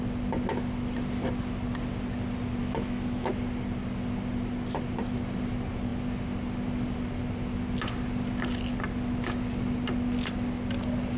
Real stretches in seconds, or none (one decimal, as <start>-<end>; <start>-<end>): 0.0-2.6; 3.3-11.2